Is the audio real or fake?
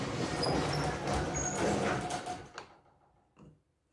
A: real